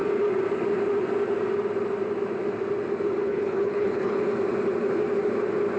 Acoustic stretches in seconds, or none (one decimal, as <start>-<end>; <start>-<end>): 0.0-3.2; 4.2-5.8